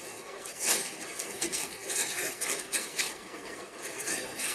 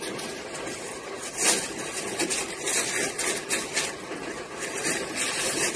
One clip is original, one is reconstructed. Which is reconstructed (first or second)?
first